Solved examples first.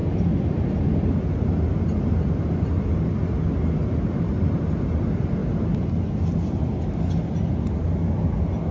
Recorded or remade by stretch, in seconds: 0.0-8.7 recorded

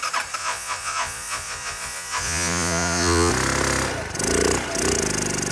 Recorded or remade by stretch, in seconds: 0.0-0.4 recorded; 0.4-3.3 remade; 3.3-5.5 recorded

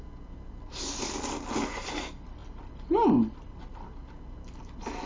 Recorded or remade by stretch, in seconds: 0.0-5.1 recorded

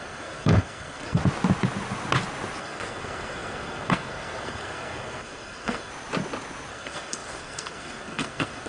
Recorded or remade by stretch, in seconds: 0.0-1.2 remade; 1.2-2.6 recorded; 2.6-5.9 remade; 5.9-6.7 recorded; 6.7-8.7 remade

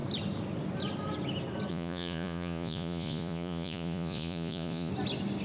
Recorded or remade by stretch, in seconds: 0.0-1.7 recorded; 1.7-4.9 remade; 4.9-5.4 recorded

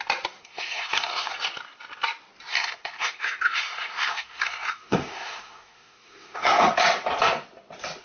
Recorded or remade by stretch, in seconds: 0.0-0.4 recorded; 0.4-1.3 remade; 1.3-2.5 recorded; 2.5-6.7 remade; 6.7-8.0 recorded